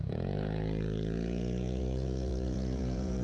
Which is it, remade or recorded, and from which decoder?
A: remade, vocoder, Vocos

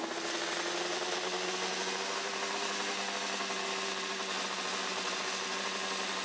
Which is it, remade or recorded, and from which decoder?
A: recorded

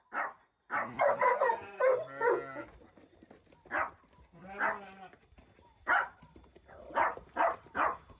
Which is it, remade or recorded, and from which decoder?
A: recorded